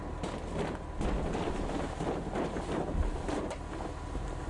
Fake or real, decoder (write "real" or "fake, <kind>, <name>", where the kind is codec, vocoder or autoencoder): real